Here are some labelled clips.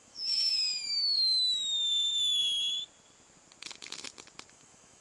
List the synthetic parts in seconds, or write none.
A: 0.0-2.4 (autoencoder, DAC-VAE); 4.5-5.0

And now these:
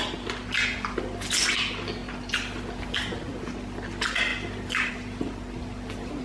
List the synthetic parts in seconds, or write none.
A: none

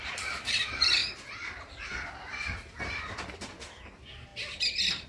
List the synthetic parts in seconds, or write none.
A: 0.0-1.0 (vocoder, BigVGAN v2); 2.9-4.3

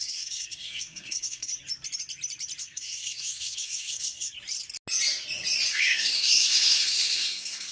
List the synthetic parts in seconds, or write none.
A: 0.0-1.5 (codec, SNAC); 2.6-4.3; 5.7-7.7

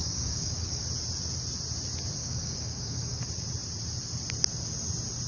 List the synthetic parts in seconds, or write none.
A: 0.0-0.8 (codec, DAC); 2.2-3.2

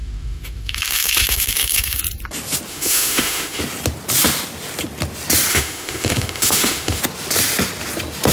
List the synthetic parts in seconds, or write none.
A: 0.0-2.0 (autoencoder, DAC-VAE); 2.7-3.6; 5.5-7.0

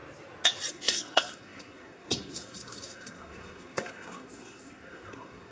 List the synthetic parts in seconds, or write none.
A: 0.7-5.5 (codec, SNAC)

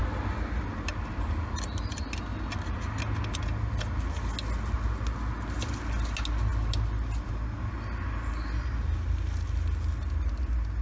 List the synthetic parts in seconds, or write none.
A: none